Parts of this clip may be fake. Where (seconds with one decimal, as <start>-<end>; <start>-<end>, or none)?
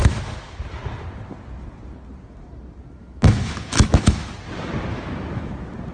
3.0-4.3; 4.9-5.5